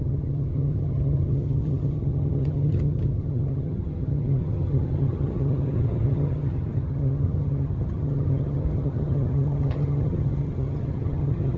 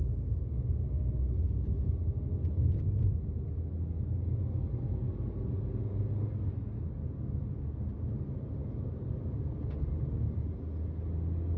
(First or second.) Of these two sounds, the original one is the second